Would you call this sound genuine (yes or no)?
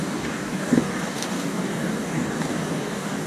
no